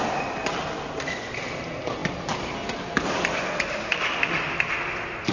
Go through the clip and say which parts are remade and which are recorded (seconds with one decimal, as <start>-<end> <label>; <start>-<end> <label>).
0.0-5.3 recorded